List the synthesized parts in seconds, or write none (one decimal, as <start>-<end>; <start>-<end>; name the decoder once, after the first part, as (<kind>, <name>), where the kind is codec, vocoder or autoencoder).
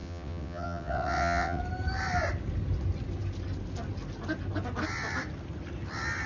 0.0-1.6 (vocoder, WaveNeXt)